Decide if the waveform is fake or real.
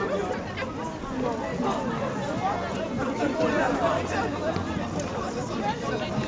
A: real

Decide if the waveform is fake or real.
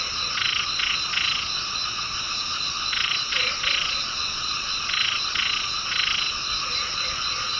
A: fake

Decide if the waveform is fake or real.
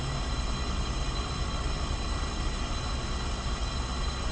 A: real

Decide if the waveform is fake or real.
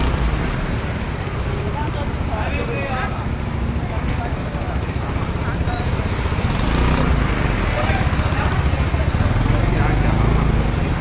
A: real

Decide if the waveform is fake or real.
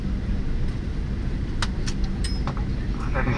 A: real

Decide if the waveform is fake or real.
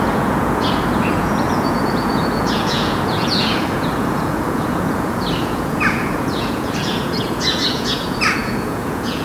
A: fake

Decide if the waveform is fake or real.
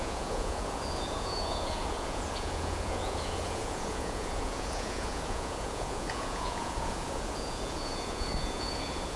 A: fake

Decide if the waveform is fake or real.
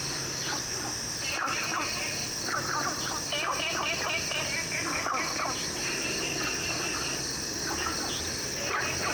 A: real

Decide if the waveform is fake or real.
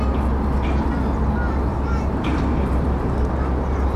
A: real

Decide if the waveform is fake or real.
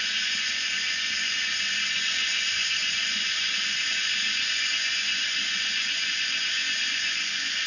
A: fake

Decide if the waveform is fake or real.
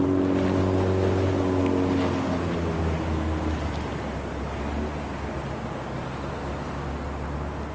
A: real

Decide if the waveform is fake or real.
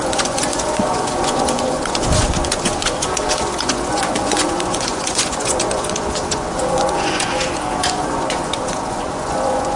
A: fake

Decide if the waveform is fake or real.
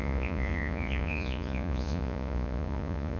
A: fake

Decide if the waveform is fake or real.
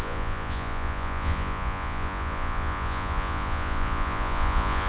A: fake